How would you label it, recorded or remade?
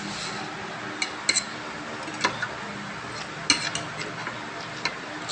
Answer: recorded